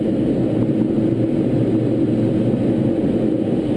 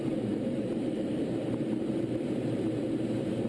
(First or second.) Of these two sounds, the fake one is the second